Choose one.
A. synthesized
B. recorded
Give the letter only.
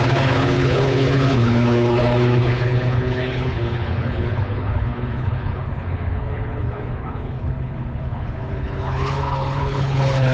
A